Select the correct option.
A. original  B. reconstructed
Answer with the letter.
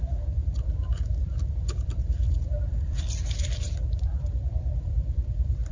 B